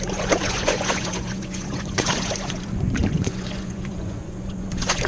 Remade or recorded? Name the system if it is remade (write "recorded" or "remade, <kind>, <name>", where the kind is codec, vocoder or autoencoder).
remade, vocoder, Vocos